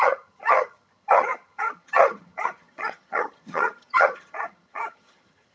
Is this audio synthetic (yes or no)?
yes